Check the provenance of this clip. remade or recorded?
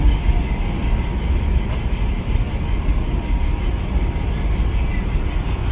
recorded